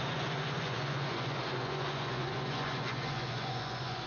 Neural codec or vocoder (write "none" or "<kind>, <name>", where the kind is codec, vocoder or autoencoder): vocoder, Vocos